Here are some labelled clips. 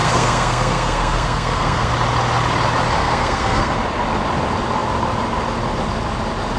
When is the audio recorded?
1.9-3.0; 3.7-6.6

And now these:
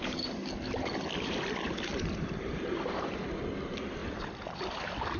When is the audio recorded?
0.0-4.0; 4.8-5.2

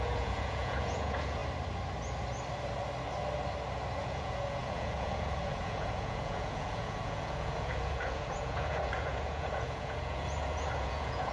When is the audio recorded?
1.4-4.0

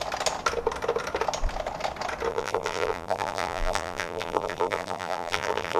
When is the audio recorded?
0.0-2.3

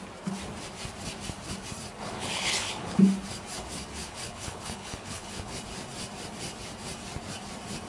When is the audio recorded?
0.0-2.0; 3.0-4.0; 5.5-7.9

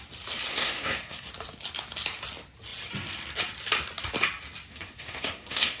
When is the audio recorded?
0.0-0.5; 1.3-4.7

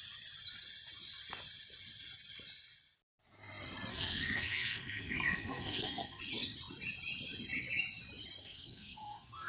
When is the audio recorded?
0.0-3.9; 6.2-8.4

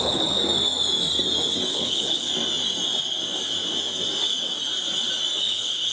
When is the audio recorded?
0.4-1.7; 2.3-5.4